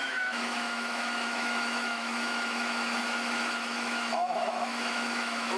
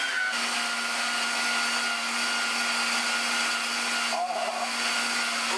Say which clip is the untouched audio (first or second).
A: second